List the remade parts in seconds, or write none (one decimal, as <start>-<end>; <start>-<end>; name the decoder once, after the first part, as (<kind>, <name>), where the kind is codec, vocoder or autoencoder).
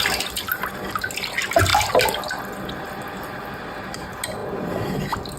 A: none